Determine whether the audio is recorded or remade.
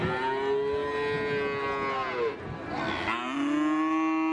recorded